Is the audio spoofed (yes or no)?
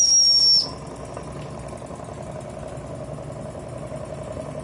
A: no